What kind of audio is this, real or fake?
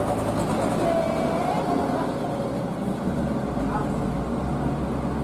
real